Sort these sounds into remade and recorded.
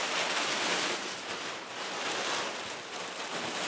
recorded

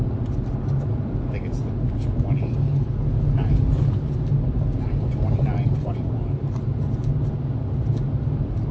recorded